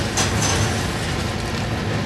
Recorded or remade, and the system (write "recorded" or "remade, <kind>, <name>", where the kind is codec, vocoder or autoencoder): recorded